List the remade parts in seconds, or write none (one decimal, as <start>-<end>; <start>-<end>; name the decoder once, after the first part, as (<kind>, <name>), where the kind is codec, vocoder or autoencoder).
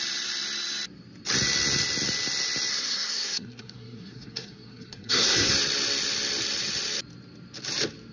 2.7-5.5 (codec, SNAC)